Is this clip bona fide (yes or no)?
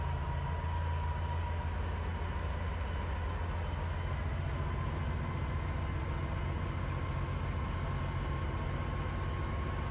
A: yes